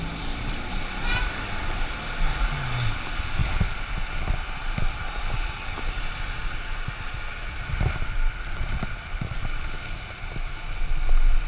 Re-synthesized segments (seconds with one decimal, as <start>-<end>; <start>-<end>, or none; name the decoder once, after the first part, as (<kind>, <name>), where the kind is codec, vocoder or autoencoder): none